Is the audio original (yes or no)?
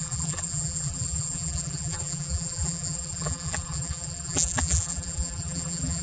no